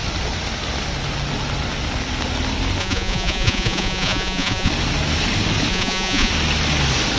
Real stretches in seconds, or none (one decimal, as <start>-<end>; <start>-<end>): 0.0-2.8; 4.7-5.7; 6.3-7.2

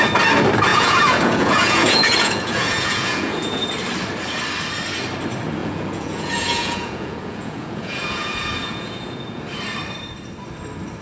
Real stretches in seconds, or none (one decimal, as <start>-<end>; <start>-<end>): 0.0-0.7; 3.7-5.6; 9.4-11.0

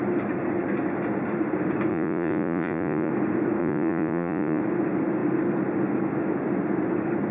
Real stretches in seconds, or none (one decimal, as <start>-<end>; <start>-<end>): 0.0-1.9; 3.1-3.6; 4.6-7.3

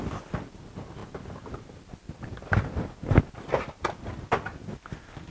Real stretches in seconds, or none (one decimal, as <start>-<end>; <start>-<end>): 0.0-5.3

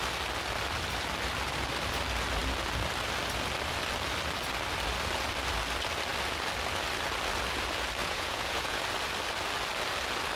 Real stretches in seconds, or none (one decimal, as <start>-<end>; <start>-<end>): 0.0-8.0; 8.8-10.4

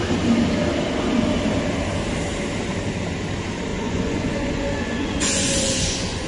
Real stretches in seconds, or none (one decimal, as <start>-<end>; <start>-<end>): 0.0-3.7

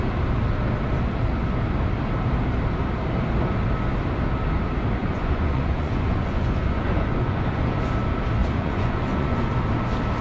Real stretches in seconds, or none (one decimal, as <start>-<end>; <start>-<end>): 0.0-5.0; 7.9-8.4; 9.4-10.2

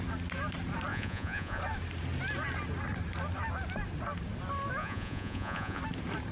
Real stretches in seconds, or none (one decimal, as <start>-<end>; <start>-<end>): 0.0-0.9; 1.6-4.8; 5.8-6.3